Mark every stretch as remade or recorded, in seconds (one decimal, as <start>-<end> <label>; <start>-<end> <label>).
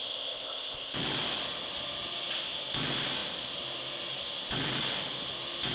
0.0-1.0 remade; 1.0-5.7 recorded